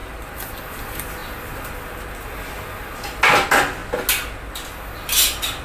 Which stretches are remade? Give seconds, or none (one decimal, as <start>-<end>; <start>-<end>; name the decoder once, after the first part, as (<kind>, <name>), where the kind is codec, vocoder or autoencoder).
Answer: none

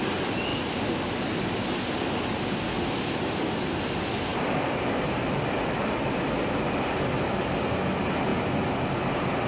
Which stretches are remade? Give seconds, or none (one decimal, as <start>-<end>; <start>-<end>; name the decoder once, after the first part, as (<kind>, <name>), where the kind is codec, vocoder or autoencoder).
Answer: 4.3-7.8 (vocoder, BigVGAN v2)

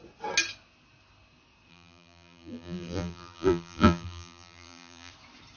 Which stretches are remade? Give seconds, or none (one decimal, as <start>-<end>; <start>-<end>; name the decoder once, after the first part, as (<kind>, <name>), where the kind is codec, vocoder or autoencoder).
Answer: 1.7-5.1 (vocoder, BigVGAN v2)